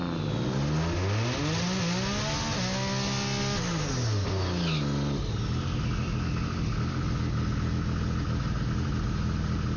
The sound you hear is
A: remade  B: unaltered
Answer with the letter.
B